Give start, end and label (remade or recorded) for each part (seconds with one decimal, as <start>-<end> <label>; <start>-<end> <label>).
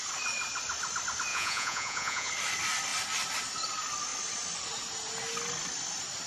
0.0-1.3 recorded; 1.3-2.3 remade; 2.3-6.3 recorded